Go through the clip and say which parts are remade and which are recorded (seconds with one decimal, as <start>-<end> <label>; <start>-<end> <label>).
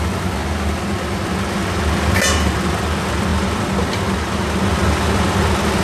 0.0-5.8 recorded